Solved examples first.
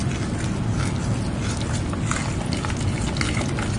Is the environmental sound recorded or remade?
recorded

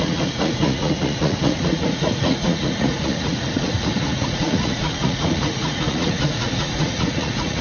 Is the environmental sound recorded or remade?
remade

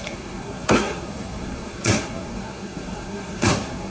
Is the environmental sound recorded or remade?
remade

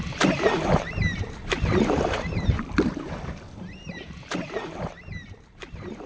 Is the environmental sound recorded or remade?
remade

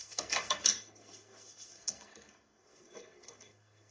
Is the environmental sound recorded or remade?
remade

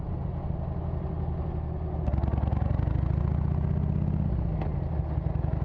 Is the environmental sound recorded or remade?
recorded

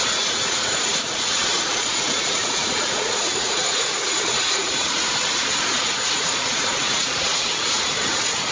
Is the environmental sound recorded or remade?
remade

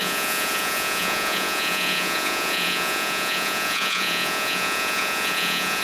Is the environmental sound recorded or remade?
remade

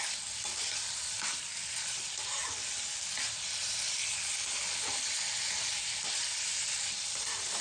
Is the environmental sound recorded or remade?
recorded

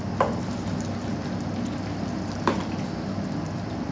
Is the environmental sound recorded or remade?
recorded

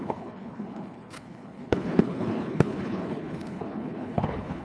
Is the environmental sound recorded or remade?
remade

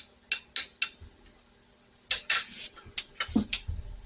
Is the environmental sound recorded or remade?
recorded